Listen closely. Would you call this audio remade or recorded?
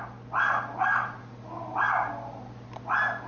recorded